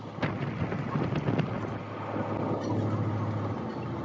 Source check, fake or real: real